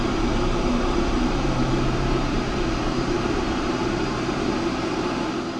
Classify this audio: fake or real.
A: fake